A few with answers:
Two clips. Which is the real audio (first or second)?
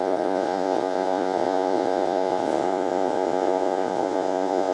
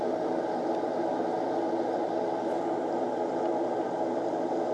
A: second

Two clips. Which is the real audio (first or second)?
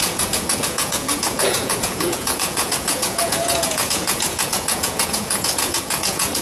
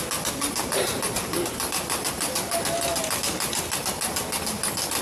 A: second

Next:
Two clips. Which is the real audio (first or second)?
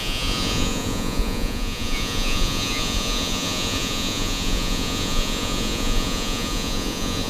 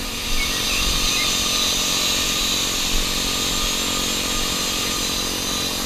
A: second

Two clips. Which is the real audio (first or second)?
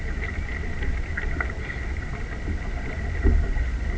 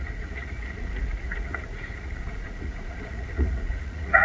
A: first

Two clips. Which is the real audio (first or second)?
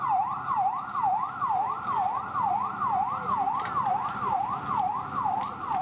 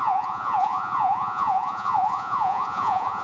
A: first